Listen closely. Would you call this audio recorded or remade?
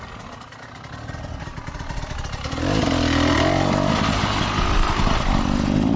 recorded